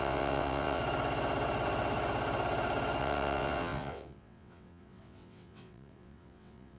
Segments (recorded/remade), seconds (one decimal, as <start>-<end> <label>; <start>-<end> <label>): 0.0-0.8 remade; 0.8-3.0 recorded; 3.0-6.8 remade